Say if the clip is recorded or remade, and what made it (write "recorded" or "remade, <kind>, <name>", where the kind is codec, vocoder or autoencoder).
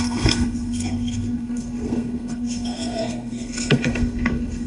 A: remade, codec, SNAC